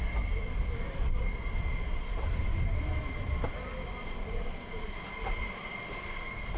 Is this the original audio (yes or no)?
yes